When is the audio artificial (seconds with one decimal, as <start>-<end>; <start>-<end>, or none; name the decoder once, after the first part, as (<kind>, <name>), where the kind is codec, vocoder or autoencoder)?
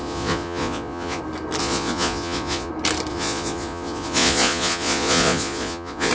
0.0-1.2 (vocoder, Vocos); 1.6-2.7; 3.1-6.1